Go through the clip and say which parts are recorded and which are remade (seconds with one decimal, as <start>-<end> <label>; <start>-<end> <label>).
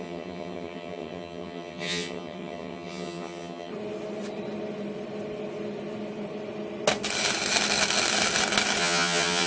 0.0-3.7 remade; 3.7-8.8 recorded; 8.8-9.5 remade